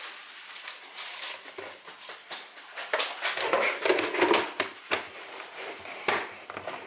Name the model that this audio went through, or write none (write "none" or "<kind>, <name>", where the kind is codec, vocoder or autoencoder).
none